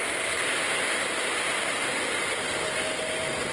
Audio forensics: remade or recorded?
recorded